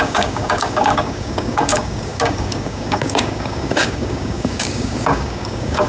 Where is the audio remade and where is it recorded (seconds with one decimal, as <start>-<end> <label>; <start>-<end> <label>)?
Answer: 0.0-5.9 remade